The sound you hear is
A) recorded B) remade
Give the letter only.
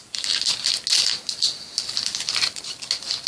A